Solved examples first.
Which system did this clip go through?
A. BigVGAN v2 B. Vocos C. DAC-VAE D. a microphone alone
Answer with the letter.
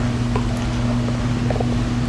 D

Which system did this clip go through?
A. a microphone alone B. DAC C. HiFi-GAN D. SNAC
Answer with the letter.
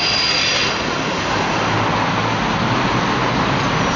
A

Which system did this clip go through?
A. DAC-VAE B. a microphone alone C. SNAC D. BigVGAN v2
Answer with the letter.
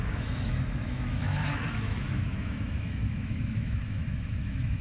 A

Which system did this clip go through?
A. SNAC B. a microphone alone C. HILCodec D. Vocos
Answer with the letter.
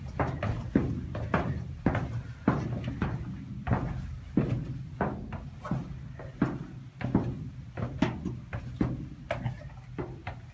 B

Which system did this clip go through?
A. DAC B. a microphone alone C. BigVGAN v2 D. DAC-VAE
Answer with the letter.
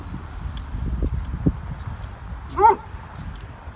B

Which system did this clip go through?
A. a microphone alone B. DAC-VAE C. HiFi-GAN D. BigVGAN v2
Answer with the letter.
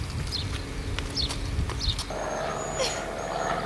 A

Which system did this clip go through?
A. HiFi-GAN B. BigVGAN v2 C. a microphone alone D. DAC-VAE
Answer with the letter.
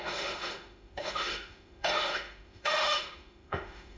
D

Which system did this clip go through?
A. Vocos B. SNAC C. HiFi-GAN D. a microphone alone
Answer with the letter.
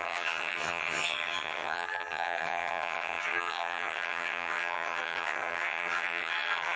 C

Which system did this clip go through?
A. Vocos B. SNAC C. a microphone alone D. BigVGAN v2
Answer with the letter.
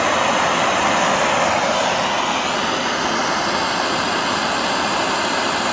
C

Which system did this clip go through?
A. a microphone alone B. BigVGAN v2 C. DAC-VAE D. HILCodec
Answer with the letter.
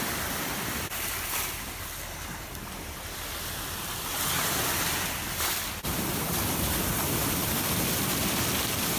B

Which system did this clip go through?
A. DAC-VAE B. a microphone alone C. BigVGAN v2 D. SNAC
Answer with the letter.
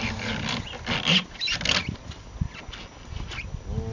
B